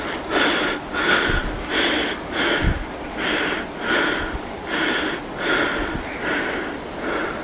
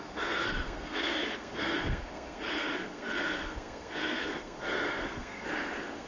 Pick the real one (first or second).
first